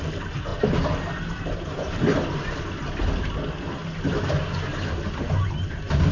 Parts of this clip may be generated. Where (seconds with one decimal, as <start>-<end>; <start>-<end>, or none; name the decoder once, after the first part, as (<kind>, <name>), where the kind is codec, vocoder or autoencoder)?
none